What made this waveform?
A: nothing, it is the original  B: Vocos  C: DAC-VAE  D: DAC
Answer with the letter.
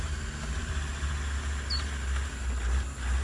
A